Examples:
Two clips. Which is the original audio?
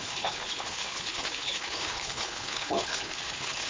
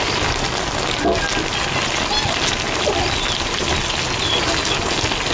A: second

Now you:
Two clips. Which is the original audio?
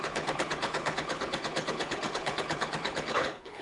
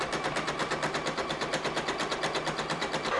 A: second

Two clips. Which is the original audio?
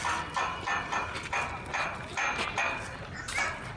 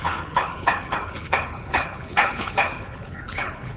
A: first